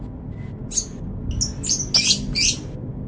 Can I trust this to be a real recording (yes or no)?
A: yes